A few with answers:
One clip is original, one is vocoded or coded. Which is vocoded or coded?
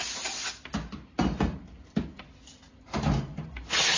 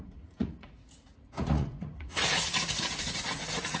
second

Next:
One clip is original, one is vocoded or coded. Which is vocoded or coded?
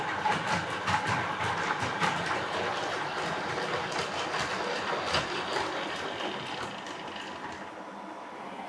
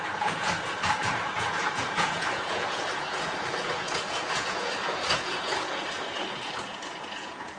second